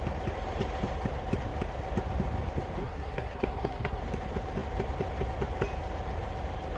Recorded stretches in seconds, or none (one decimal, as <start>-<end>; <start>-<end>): 0.0-2.8; 4.0-6.8